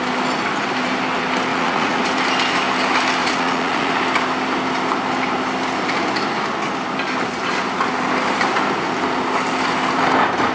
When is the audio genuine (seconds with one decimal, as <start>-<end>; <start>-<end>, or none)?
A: 0.0-1.5; 2.0-3.2; 3.9-10.5